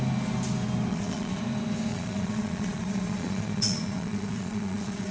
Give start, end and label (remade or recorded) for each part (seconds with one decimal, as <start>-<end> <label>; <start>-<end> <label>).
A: 0.0-0.9 recorded; 0.9-1.4 remade; 1.4-1.9 recorded; 1.9-5.1 remade